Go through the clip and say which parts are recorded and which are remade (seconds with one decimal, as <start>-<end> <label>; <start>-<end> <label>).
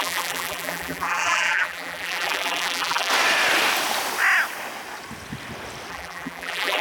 0.0-3.1 remade; 3.1-5.9 recorded; 5.9-6.8 remade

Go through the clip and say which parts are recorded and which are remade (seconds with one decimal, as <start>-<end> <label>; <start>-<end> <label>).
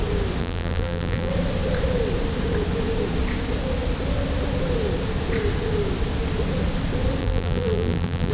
0.0-0.4 recorded; 0.4-1.3 remade; 1.3-7.2 recorded; 7.2-8.3 remade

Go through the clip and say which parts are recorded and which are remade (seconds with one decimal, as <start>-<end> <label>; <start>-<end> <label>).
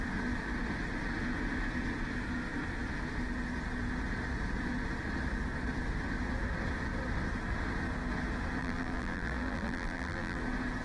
0.0-8.6 recorded; 8.6-10.4 remade; 10.4-10.8 recorded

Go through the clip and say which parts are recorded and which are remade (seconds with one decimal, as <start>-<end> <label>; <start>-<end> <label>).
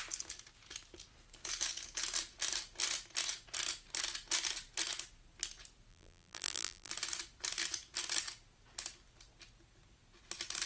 0.0-5.9 recorded; 5.9-6.9 remade; 6.9-10.7 recorded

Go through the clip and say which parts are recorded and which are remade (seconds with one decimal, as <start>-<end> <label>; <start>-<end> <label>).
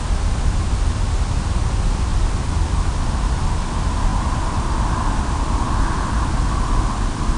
0.0-2.1 recorded; 2.1-3.3 remade; 3.3-7.4 recorded